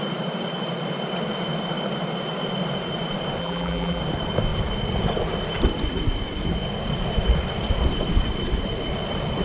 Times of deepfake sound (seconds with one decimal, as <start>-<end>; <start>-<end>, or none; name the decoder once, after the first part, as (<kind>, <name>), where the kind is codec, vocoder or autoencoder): 3.4-4.0 (vocoder, BigVGAN v2)